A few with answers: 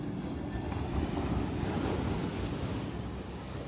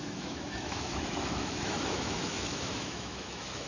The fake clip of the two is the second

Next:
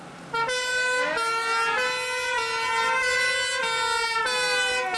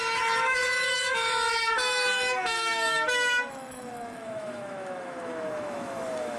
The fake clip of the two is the second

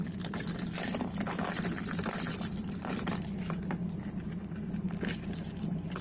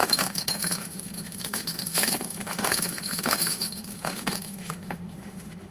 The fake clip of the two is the second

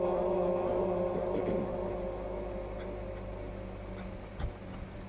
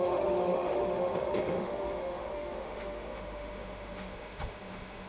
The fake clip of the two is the second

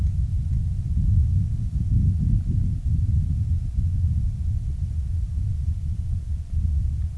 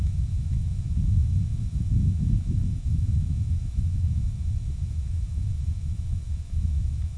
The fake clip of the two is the second